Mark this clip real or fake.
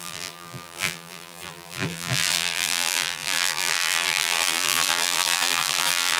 fake